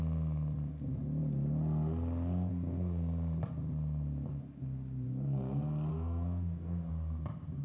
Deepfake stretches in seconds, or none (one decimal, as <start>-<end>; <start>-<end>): 5.9-6.9